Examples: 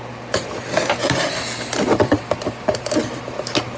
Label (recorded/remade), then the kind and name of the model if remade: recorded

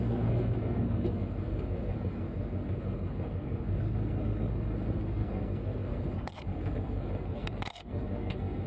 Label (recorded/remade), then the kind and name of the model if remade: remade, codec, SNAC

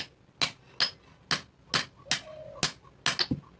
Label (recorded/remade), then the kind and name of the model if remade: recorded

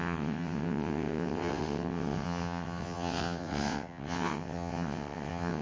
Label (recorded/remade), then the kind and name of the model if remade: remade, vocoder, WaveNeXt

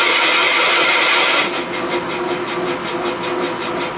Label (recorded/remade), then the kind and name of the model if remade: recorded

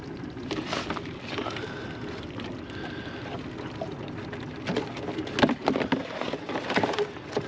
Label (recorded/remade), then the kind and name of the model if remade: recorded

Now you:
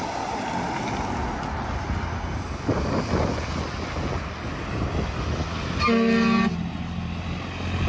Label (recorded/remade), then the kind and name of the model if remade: recorded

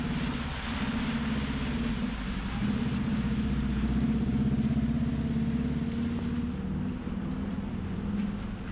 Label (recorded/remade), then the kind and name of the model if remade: recorded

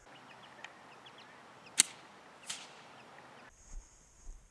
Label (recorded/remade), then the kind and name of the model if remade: recorded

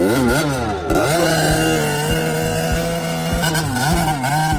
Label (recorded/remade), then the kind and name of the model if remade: recorded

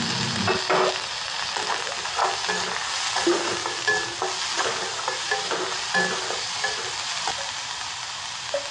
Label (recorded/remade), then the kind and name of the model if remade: recorded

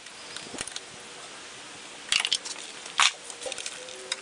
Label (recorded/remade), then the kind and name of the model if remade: recorded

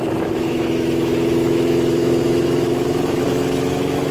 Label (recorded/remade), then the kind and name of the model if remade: remade, autoencoder, DAC-VAE